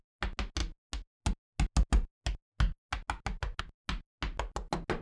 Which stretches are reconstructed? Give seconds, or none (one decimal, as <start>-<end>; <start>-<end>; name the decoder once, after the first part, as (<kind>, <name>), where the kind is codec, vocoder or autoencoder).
none